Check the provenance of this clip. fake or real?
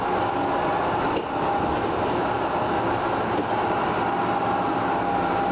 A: real